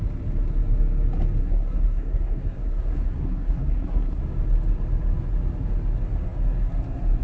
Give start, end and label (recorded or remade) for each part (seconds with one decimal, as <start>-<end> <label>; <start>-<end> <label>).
0.0-1.4 recorded; 1.4-4.2 remade; 4.2-7.2 recorded